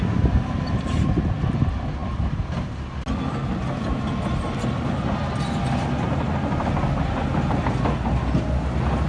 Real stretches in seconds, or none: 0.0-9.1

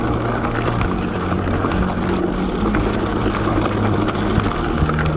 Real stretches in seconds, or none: 0.0-1.1; 2.0-3.1; 4.3-5.2

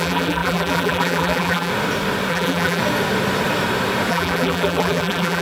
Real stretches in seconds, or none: 1.7-2.3; 2.8-4.1

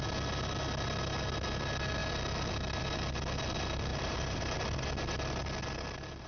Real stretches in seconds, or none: 0.0-3.9; 4.9-6.3

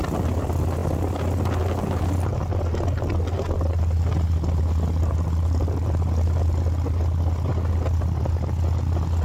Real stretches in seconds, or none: 0.0-9.2

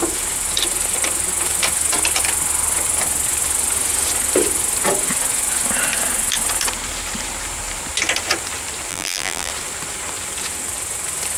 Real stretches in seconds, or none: 0.0-8.9; 9.5-11.4

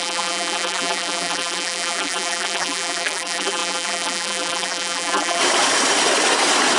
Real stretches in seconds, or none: 5.4-6.8